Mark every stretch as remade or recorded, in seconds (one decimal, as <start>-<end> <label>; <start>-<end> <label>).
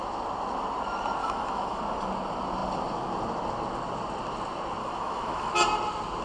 0.0-1.2 recorded; 1.2-1.8 remade; 1.8-4.8 recorded; 4.8-5.5 remade; 5.5-6.2 recorded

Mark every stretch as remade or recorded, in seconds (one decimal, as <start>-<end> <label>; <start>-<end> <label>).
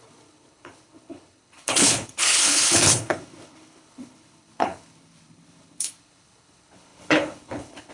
0.0-7.9 remade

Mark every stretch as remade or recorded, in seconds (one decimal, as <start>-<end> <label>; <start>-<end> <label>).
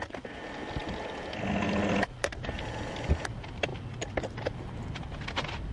0.0-5.7 recorded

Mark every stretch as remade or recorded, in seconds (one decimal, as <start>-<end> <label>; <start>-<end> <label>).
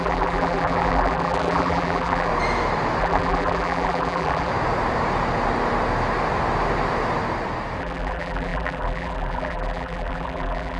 0.0-2.3 remade; 2.3-3.0 recorded; 3.0-4.5 remade; 4.5-7.8 recorded; 7.8-10.8 remade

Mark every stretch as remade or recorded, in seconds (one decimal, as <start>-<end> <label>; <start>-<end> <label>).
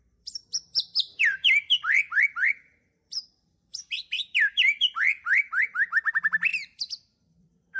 0.0-7.8 remade